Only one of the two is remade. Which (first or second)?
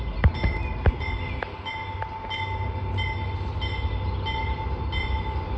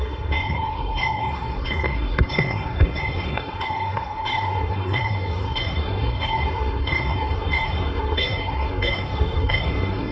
second